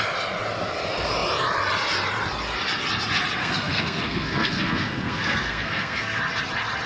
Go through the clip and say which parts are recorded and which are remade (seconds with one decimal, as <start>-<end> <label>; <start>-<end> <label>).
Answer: 0.0-3.4 recorded; 3.4-6.2 remade; 6.2-6.9 recorded